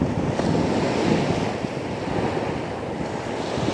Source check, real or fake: real